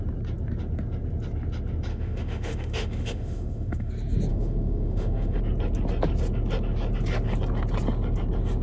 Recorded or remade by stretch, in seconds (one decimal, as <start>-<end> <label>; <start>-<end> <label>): 0.0-1.9 recorded; 1.9-3.9 remade; 3.9-4.3 recorded; 4.3-5.4 remade; 5.4-8.6 recorded

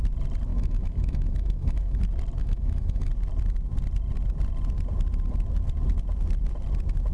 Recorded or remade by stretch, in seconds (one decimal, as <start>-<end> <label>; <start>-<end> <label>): 0.0-0.5 recorded; 0.5-2.0 remade; 2.0-2.4 recorded; 2.4-3.1 remade; 3.1-7.1 recorded

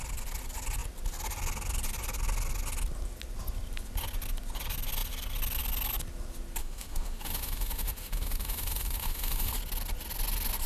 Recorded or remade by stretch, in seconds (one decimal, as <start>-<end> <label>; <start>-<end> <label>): 0.0-6.6 recorded; 6.6-9.5 remade; 9.5-10.7 recorded

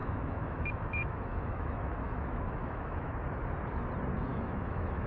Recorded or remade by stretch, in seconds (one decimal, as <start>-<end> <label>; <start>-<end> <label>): 0.0-3.1 remade; 3.1-4.3 recorded; 4.3-5.1 remade

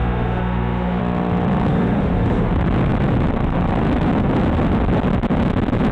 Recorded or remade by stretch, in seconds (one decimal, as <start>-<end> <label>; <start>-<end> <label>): 0.0-1.0 remade; 1.0-1.7 recorded; 1.7-2.5 remade; 2.5-5.9 recorded